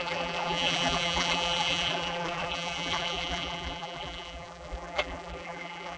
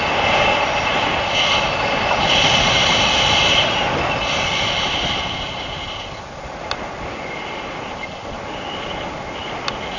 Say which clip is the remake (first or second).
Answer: first